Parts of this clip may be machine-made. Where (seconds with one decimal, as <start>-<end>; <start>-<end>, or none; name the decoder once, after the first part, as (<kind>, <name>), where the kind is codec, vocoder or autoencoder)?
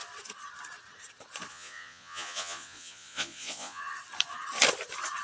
1.5-3.8 (vocoder, Vocos)